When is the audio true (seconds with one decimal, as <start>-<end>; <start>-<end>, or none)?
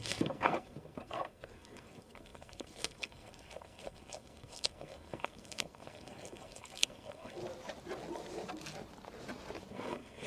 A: 7.4-9.7